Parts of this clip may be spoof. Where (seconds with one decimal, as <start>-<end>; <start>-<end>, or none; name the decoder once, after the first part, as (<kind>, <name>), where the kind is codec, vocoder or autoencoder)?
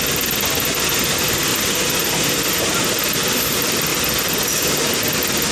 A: 1.5-2.7 (vocoder, BigVGAN v2); 3.9-4.9